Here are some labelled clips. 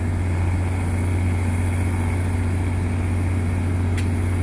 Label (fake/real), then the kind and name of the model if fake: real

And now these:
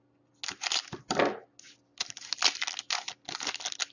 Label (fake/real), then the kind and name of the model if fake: real